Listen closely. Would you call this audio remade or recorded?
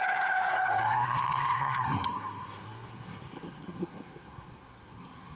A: remade